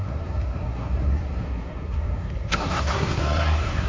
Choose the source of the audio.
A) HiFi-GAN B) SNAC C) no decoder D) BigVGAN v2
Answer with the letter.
B